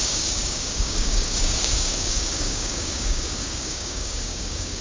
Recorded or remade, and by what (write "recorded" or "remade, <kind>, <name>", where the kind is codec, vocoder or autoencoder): remade, codec, DAC